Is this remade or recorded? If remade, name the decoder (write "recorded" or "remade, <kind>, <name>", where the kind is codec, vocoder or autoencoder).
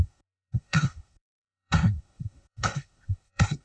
remade, codec, SNAC